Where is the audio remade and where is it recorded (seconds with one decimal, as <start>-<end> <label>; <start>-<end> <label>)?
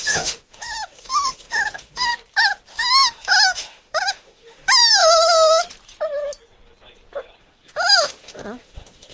0.0-2.1 remade; 2.1-2.7 recorded; 2.7-5.0 remade; 5.0-7.4 recorded; 7.4-9.1 remade